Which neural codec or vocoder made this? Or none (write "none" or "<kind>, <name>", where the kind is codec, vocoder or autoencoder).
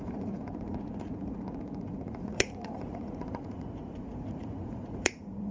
vocoder, Vocos